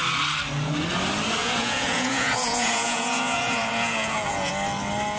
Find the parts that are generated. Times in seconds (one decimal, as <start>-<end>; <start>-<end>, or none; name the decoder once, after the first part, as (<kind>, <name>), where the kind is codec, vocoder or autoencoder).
1.4-4.5 (vocoder, Vocos)